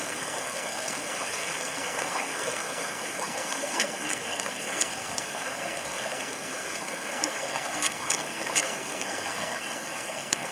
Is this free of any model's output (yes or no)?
no